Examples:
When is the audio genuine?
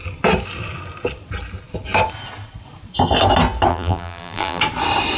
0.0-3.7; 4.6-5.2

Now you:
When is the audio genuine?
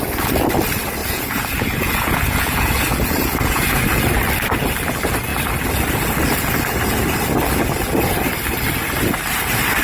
0.0-1.0; 4.0-9.8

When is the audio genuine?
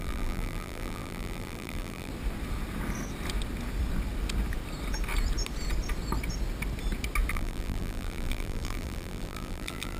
2.1-7.3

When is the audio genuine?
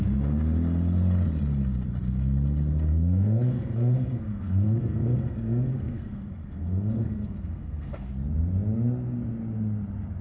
0.0-2.9; 8.1-10.2